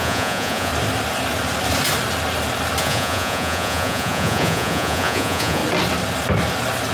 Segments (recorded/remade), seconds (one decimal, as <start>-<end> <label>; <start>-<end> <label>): 0.0-0.7 remade; 0.7-2.8 recorded; 2.8-5.6 remade; 5.6-6.9 recorded